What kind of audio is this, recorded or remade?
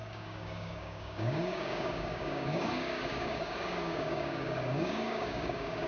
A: remade